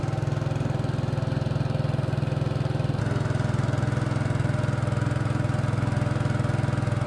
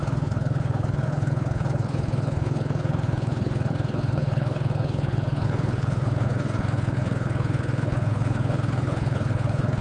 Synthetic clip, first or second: second